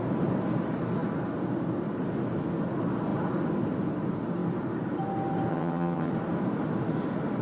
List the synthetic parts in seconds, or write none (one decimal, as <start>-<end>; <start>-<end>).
5.5-6.1